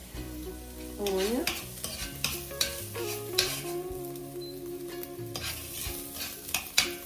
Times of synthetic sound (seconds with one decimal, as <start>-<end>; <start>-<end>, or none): 0.0-0.5